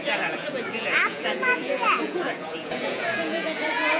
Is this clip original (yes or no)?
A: no